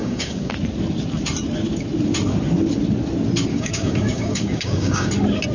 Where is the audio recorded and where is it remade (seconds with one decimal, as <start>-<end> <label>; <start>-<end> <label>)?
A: 0.0-0.5 remade; 0.5-3.5 recorded; 3.5-5.1 remade; 5.1-5.5 recorded

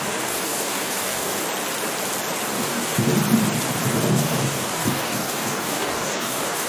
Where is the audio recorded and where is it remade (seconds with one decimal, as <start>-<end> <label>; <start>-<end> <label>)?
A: 0.0-1.4 remade; 1.4-2.5 recorded; 2.5-3.1 remade; 3.1-4.1 recorded; 4.1-6.7 remade

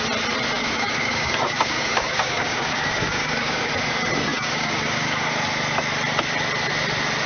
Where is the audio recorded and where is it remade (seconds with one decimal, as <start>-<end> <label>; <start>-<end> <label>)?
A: 0.0-0.6 recorded; 0.6-3.7 remade; 3.7-4.3 recorded; 4.3-5.3 remade; 5.3-7.3 recorded

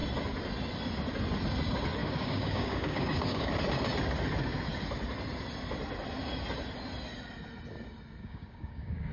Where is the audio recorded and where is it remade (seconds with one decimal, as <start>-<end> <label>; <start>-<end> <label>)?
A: 0.0-2.0 recorded; 2.0-3.5 remade; 3.5-8.2 recorded; 8.2-9.1 remade

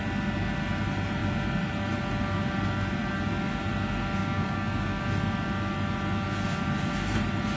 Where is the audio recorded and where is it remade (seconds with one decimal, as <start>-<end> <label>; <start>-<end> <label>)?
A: 0.0-4.2 recorded; 4.2-5.0 remade; 5.0-7.6 recorded